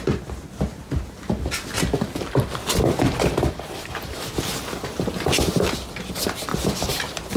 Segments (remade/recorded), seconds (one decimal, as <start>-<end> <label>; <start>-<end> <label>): 0.0-6.5 recorded; 6.5-7.4 remade